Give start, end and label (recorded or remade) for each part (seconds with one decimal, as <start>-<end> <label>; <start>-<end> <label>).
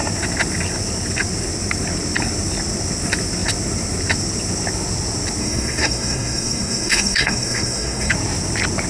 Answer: 0.0-5.4 recorded; 5.4-8.1 remade; 8.1-8.9 recorded